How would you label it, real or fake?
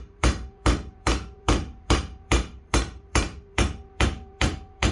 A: fake